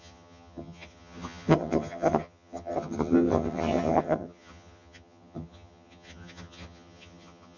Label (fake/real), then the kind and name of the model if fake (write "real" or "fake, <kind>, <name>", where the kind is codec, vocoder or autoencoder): fake, vocoder, HiFi-GAN